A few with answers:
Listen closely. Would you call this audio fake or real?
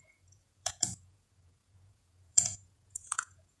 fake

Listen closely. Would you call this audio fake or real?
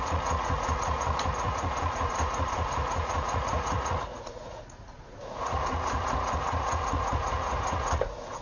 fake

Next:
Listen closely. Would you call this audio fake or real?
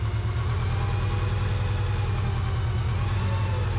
real